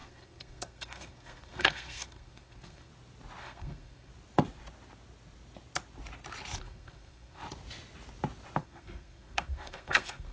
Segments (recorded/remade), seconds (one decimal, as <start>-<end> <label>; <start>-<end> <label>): 0.0-2.9 remade; 2.9-3.4 recorded; 3.4-4.1 remade; 4.1-6.6 recorded; 6.6-7.4 remade; 7.4-8.6 recorded; 8.6-10.3 remade